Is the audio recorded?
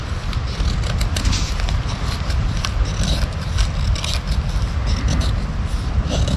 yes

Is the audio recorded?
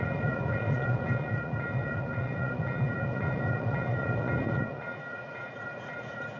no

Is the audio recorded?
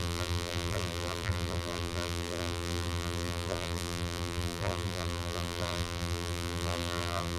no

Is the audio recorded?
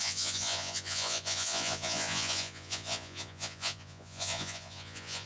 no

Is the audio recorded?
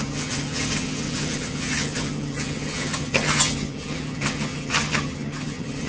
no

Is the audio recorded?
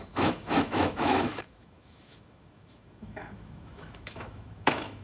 no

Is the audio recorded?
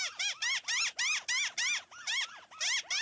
yes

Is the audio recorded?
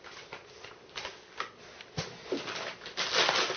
yes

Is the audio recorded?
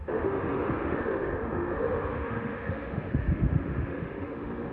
no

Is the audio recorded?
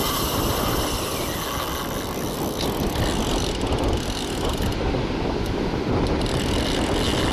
yes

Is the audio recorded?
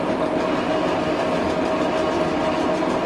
yes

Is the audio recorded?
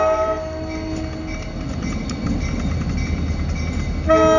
yes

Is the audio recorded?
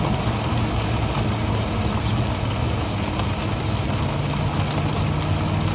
yes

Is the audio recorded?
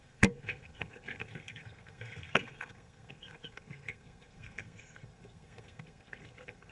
no